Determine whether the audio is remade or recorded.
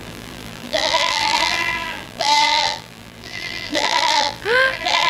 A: remade